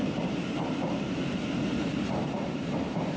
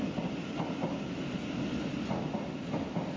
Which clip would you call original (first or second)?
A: second